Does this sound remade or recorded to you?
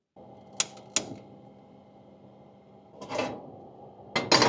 recorded